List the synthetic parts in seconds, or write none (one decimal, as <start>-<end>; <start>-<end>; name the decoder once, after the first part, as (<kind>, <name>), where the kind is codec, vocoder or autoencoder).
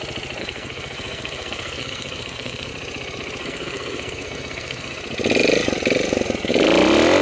0.4-2.7 (codec, SNAC); 3.4-5.0